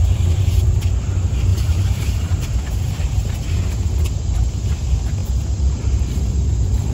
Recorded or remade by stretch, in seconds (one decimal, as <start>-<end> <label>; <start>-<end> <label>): 0.0-0.7 remade; 0.7-1.5 recorded; 1.5-3.7 remade; 3.7-6.9 recorded

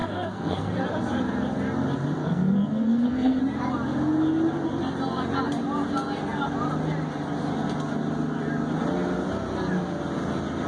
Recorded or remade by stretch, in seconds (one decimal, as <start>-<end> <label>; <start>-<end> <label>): 0.0-0.7 remade; 0.7-2.2 recorded; 2.2-3.4 remade; 3.4-10.7 recorded

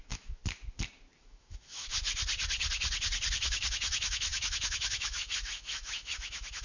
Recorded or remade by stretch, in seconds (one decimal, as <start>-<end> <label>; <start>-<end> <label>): 0.0-0.4 remade; 0.4-1.2 recorded; 1.2-1.9 remade; 1.9-3.3 recorded; 3.3-6.6 remade